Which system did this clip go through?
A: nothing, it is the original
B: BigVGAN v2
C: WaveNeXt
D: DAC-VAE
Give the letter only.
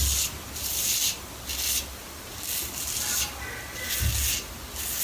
A